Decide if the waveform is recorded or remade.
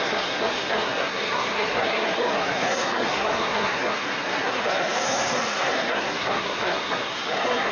remade